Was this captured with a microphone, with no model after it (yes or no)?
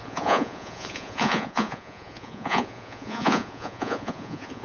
no